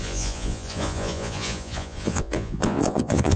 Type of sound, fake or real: fake